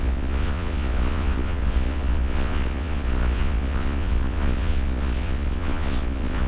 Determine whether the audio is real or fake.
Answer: fake